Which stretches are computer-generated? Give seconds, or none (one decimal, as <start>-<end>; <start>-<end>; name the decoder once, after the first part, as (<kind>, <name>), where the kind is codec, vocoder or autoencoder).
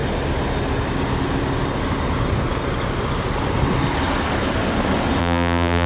5.2-5.9 (vocoder, BigVGAN v2)